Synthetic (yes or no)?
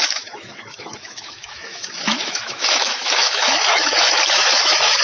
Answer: yes